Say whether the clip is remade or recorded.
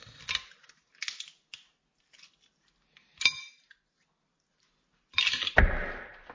recorded